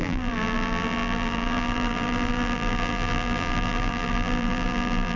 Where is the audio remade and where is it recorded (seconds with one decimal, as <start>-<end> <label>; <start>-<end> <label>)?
0.0-5.2 remade